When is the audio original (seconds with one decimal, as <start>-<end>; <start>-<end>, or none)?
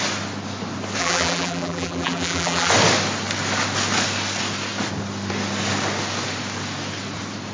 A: 0.0-1.0; 2.7-7.5